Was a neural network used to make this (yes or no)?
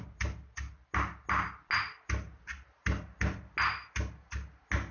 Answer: no